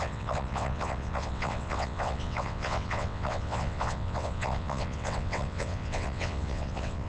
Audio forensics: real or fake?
fake